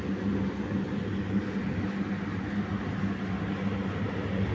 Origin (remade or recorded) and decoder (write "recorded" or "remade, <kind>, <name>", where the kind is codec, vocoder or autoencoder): recorded